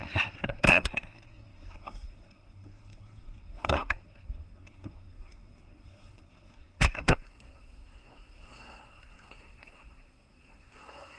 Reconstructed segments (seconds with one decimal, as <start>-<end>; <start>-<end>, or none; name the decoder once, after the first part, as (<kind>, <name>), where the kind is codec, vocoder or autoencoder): 0.0-11.2 (codec, SNAC)